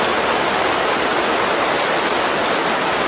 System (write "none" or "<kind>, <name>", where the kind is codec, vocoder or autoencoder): none